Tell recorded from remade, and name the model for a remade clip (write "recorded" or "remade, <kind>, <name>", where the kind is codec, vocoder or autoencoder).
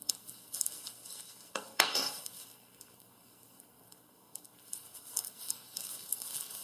remade, codec, SNAC